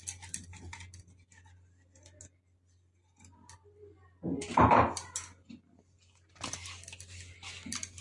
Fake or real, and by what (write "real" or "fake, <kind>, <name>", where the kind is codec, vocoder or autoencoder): real